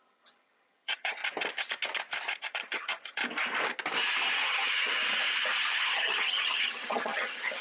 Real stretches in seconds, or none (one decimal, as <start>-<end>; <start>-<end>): 1.2-2.4; 3.2-4.3; 5.0-5.8